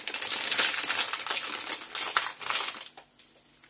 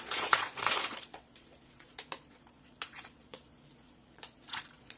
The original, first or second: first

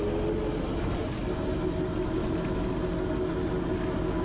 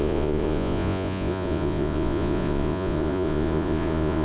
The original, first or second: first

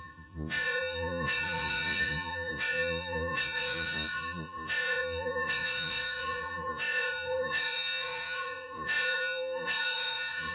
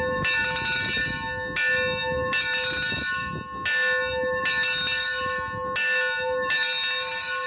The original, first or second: second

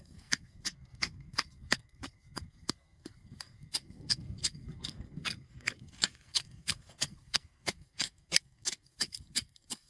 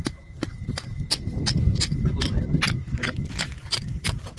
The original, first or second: second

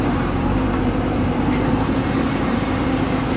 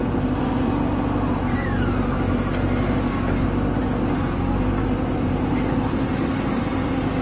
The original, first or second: second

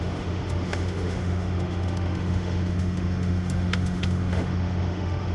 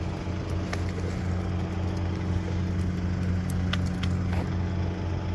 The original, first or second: second